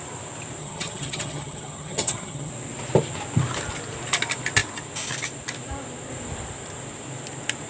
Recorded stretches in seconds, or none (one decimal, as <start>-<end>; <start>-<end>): 0.0-0.6; 2.5-7.7